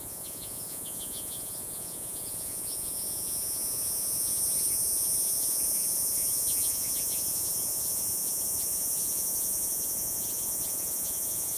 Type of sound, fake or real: fake